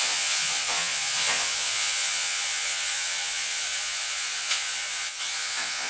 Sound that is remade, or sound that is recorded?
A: remade